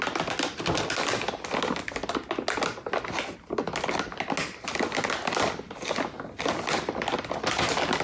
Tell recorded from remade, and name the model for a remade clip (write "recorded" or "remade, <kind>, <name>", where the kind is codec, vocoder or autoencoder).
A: recorded